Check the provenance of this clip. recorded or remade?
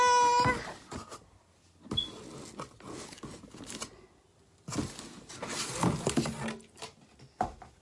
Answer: recorded